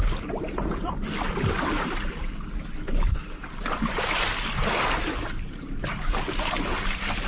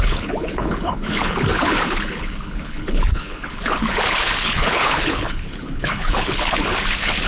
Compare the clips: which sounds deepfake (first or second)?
second